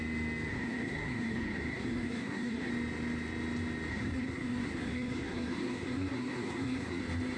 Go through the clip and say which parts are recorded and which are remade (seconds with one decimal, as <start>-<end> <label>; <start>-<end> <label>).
0.0-0.5 recorded; 0.5-2.7 remade; 2.7-3.9 recorded; 3.9-7.0 remade; 7.0-7.4 recorded